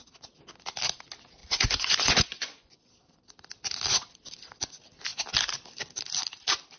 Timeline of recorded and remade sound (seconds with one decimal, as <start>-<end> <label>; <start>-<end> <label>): 0.0-1.4 recorded; 1.4-2.9 remade; 2.9-6.8 recorded